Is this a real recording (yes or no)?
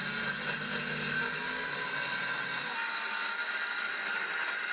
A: yes